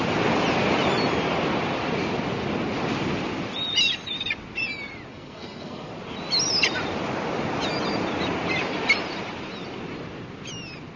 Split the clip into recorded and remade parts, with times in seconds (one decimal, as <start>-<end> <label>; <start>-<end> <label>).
0.0-5.1 recorded; 5.1-5.9 remade; 5.9-11.0 recorded